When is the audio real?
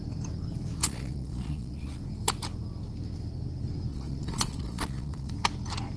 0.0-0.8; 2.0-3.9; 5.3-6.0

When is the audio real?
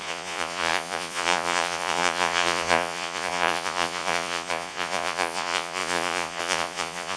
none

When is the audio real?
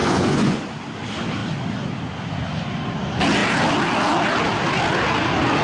0.6-5.6